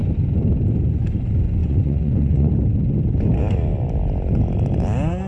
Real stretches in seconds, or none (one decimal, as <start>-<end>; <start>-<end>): 0.0-1.6; 2.5-5.3